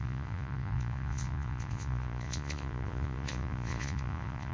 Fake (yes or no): yes